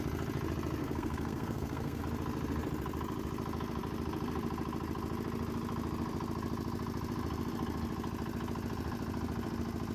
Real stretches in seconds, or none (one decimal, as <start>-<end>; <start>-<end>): 0.0-0.8; 2.0-9.9